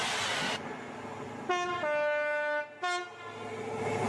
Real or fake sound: real